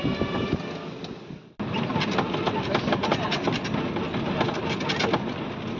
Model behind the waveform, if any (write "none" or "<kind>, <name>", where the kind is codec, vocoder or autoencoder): none